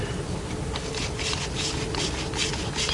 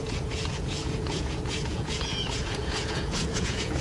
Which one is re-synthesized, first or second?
second